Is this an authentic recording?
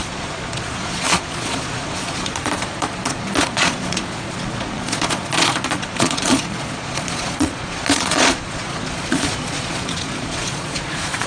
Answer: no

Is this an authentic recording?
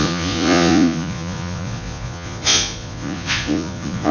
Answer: no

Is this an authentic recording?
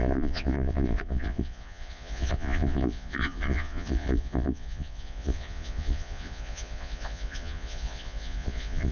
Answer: no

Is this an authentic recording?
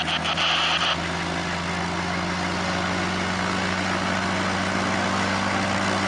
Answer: yes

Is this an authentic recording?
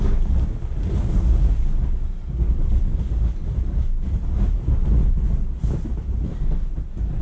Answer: yes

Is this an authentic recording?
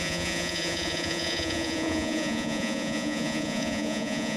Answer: no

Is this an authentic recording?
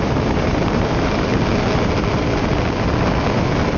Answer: yes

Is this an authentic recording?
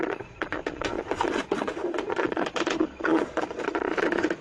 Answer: no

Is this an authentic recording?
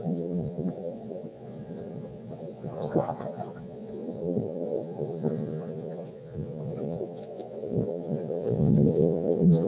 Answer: no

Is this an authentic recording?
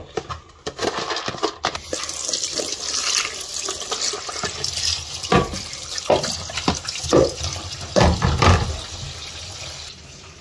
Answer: yes